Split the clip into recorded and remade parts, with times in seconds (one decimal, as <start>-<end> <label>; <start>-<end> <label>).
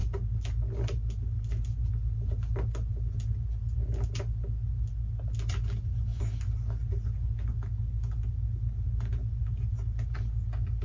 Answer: 0.0-10.8 recorded